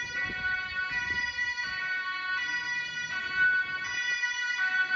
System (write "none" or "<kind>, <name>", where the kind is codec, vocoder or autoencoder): none